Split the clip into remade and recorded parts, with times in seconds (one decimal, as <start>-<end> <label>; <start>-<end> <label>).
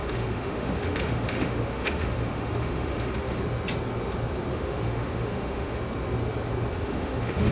0.0-3.4 remade; 3.4-4.5 recorded; 4.5-5.8 remade; 5.8-6.8 recorded; 6.8-7.5 remade